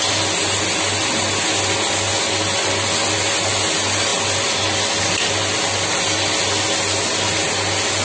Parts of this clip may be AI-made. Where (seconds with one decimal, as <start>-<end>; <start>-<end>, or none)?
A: none